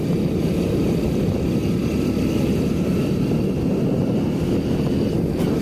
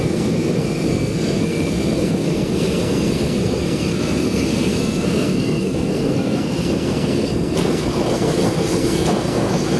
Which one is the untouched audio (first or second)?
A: first